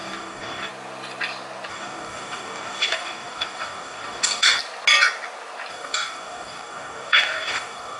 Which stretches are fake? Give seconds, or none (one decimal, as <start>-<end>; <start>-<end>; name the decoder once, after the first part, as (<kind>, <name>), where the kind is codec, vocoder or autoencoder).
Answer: 0.0-0.7 (codec, DAC); 1.7-4.6; 5.7-8.0